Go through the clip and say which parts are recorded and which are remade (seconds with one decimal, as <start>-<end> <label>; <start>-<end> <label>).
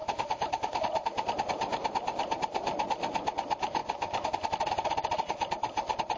0.0-0.8 remade; 0.8-6.2 recorded